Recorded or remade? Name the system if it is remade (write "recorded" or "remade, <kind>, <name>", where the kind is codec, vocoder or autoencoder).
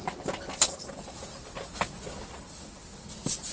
recorded